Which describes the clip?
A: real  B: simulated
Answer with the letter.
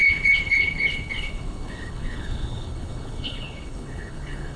B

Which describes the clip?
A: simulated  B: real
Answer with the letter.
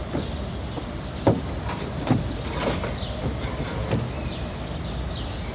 B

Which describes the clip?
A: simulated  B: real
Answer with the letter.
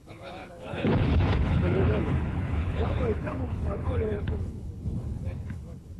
A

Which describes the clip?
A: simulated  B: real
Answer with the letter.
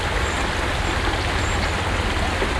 B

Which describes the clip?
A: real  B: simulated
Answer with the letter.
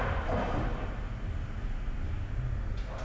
A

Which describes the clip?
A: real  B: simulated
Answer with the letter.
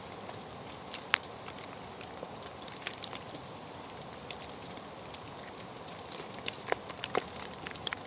A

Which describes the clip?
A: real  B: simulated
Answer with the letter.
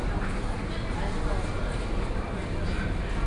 A